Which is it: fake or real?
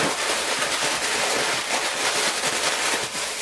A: real